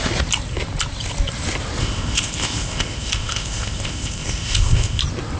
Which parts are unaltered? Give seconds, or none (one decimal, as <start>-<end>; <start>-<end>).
0.0-1.8; 5.0-5.4